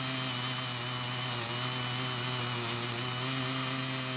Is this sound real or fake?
real